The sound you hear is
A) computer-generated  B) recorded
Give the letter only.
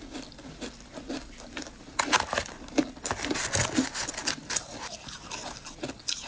B